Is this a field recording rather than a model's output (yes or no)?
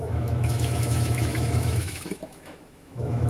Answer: no